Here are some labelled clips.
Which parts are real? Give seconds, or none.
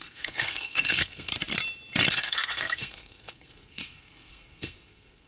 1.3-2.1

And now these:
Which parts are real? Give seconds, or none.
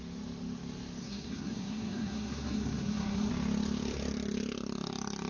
0.0-1.0; 3.3-5.3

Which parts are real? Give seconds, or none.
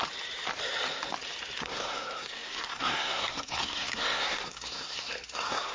0.0-1.6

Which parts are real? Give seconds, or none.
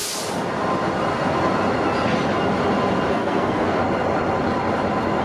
0.0-3.1; 3.8-5.2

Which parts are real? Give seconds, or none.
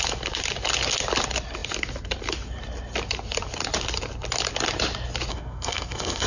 0.0-5.3